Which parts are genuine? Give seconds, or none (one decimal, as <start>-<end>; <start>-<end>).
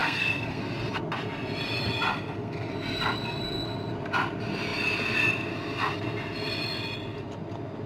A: 0.6-2.1; 2.7-7.9